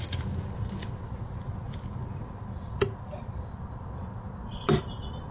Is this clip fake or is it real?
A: real